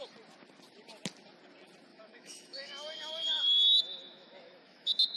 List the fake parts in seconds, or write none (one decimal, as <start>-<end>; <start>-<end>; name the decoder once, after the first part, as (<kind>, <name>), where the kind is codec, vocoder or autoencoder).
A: 1.9-5.2 (autoencoder, DAC-VAE)